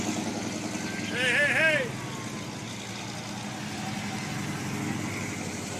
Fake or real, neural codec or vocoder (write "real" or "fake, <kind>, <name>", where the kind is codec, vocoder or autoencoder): real